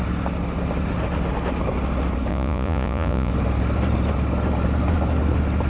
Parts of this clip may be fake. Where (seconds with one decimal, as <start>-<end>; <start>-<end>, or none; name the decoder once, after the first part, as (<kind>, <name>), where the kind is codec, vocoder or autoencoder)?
2.3-3.3 (vocoder, Vocos)